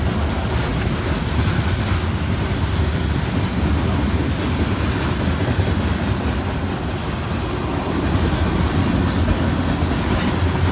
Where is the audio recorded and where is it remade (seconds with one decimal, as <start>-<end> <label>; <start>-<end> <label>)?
0.0-10.7 recorded